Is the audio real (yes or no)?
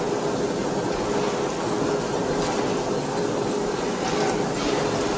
yes